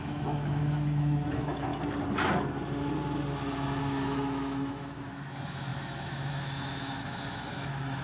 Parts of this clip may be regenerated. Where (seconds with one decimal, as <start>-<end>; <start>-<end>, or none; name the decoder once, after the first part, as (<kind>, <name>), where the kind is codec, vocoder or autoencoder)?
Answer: 0.0-1.7 (autoencoder, DAC-VAE); 3.8-8.0